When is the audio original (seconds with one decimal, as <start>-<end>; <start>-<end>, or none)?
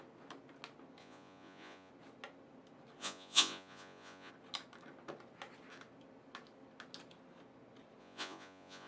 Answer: 0.0-1.0; 1.9-3.0; 4.3-8.0